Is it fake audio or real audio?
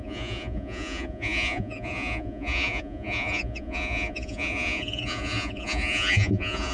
fake